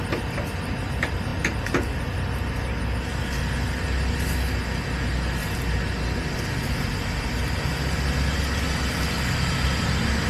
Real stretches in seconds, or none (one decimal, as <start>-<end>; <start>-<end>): 0.0-10.3